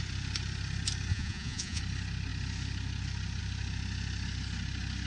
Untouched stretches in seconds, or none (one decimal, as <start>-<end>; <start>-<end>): 0.0-1.1; 1.8-5.1

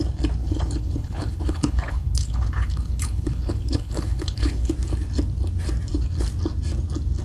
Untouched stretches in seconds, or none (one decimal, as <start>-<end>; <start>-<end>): 0.0-0.4; 4.7-7.2

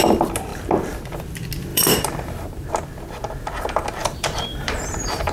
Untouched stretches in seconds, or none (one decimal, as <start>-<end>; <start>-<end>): 0.0-1.7; 2.7-4.0

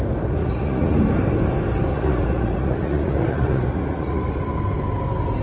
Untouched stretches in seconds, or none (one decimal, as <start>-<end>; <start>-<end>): 0.0-0.4; 1.0-1.9; 4.3-5.4

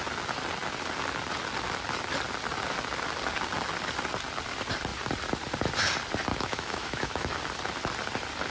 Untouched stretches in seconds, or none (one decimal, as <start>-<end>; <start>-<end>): 0.0-6.3; 7.4-8.5

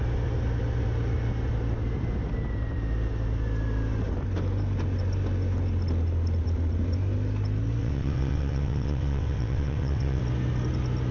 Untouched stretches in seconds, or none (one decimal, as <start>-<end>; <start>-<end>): 0.0-7.8; 10.2-11.1

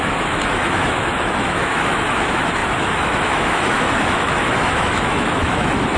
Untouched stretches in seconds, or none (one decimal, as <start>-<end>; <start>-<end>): none

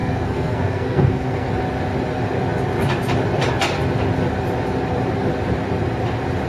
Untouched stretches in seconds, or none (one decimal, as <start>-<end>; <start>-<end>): 1.5-6.5